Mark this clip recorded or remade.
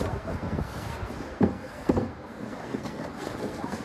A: remade